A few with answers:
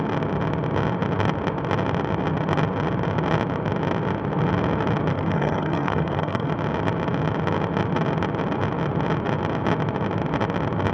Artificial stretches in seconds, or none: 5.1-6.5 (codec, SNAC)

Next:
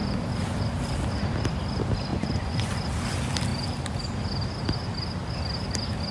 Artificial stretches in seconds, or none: 2.1-2.7 (vocoder, Vocos)

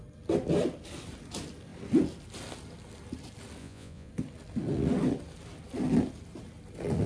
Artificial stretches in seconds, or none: 3.6-4.1 (vocoder, Vocos)

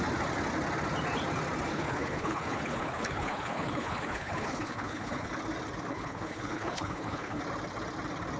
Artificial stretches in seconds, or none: 1.7-5.3 (codec, HILCodec); 5.9-7.4

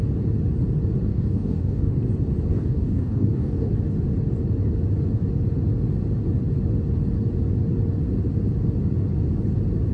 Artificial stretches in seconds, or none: 1.1-1.9 (codec, DAC); 2.5-3.7

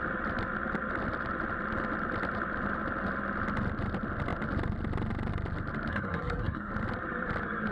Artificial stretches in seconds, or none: 5.9-6.7 (codec, SNAC)